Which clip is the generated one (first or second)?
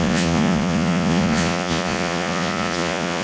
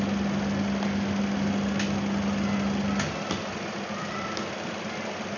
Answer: first